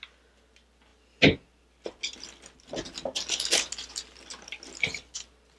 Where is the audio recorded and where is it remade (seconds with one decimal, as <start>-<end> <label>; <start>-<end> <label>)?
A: 0.0-5.6 recorded